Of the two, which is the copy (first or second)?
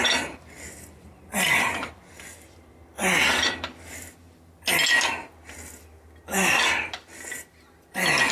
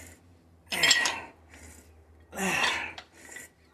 second